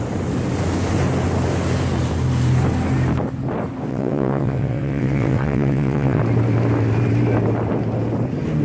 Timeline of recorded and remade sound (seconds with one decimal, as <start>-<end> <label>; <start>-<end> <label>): 0.0-3.9 recorded; 3.9-6.2 remade; 6.2-8.6 recorded